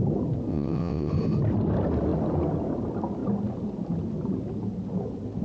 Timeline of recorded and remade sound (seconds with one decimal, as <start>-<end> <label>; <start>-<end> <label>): 0.0-0.5 recorded; 0.5-1.1 remade; 1.1-5.4 recorded